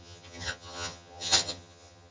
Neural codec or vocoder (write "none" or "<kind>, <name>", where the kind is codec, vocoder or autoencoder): vocoder, HiFi-GAN